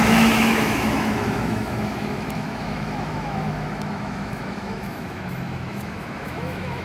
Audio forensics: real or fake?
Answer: fake